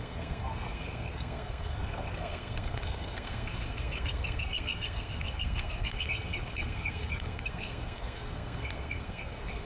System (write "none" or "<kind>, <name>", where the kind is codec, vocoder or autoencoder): codec, SNAC